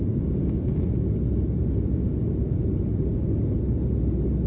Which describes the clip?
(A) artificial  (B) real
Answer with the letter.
B